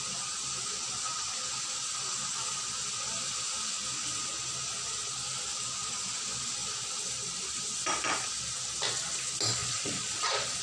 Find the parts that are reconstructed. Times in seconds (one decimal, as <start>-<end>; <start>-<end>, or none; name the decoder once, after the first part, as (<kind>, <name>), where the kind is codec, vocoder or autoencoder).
9.6-10.6 (vocoder, Vocos)